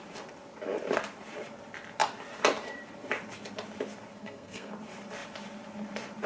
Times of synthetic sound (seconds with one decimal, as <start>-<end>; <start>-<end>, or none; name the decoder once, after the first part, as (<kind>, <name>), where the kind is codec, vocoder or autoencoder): 4.2-4.7 (codec, SNAC)